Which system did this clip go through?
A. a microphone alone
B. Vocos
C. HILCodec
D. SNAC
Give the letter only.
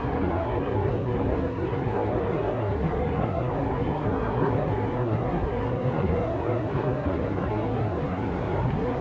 D